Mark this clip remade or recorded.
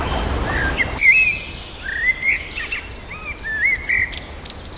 recorded